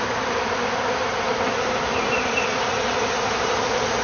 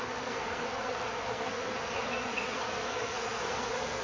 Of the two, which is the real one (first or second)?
first